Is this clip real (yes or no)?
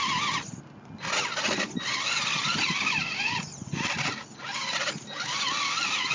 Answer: yes